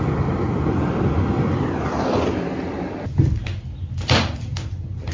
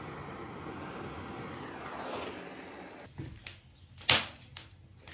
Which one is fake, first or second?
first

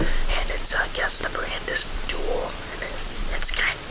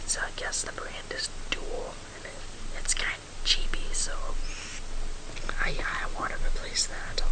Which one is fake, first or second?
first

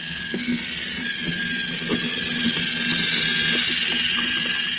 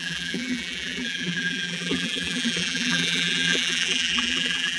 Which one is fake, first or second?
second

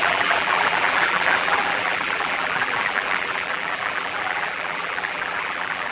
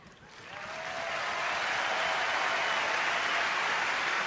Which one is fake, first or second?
first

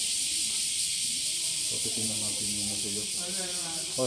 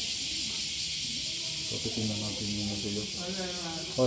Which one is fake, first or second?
first